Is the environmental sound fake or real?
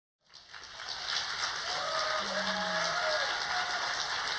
real